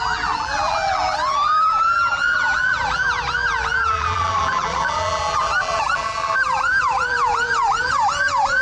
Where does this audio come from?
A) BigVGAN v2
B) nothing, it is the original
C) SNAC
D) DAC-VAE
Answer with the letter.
A